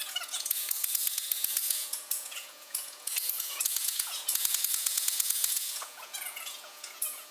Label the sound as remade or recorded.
remade